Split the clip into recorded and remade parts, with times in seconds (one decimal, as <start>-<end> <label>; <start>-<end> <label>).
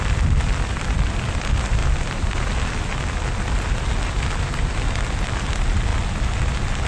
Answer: 0.0-6.9 recorded